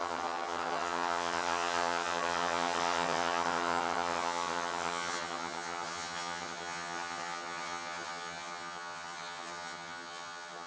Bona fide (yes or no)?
no